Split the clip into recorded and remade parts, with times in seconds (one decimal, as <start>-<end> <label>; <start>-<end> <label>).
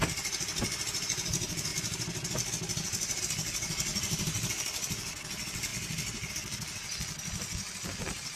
0.0-1.7 recorded; 1.7-3.2 remade; 3.2-3.9 recorded; 3.9-4.5 remade; 4.5-8.4 recorded